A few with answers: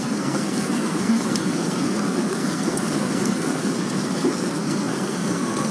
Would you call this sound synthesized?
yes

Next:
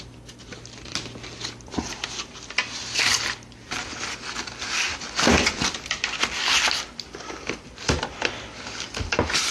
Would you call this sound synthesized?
no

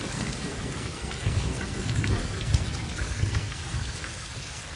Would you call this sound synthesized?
yes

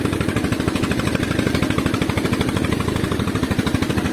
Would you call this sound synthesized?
no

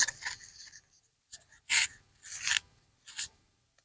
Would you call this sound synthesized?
no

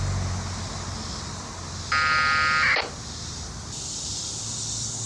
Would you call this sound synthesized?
no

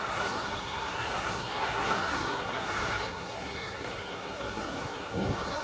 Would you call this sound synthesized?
yes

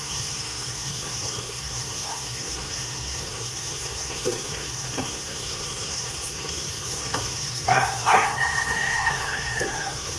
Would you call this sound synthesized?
yes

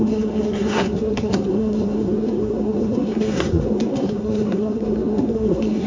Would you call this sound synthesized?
yes